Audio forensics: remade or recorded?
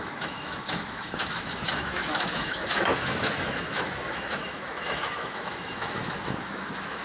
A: remade